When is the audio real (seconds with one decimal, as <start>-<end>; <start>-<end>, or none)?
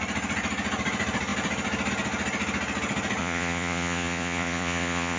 0.0-3.2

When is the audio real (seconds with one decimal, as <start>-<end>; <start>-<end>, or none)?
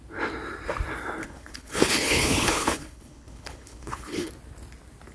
0.0-1.2; 4.3-5.1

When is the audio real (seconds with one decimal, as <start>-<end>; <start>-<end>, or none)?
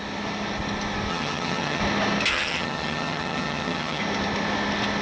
0.0-1.1; 1.8-2.3; 4.0-5.0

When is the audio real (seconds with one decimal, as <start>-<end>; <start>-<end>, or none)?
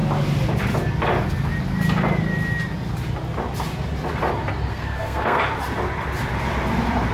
0.0-4.7; 5.4-7.1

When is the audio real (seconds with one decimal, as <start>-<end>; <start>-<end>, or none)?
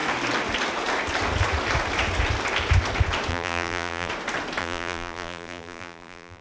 0.0-3.3; 4.1-4.6